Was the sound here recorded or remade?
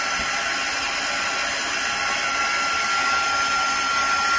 recorded